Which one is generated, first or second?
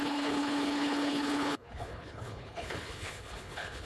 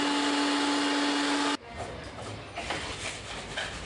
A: first